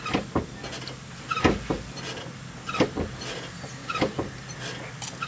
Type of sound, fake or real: real